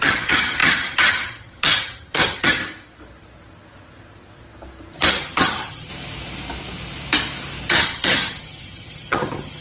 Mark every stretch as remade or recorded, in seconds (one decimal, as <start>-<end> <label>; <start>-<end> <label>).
0.0-2.6 remade; 2.6-5.1 recorded; 5.1-5.9 remade; 5.9-7.7 recorded; 7.7-9.6 remade